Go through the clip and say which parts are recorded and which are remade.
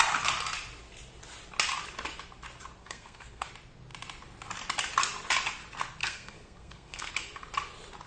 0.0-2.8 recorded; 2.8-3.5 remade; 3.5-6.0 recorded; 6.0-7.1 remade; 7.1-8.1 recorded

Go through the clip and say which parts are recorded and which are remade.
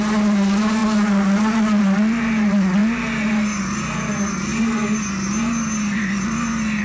0.0-6.8 recorded